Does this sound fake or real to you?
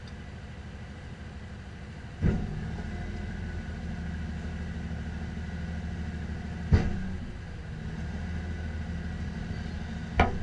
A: real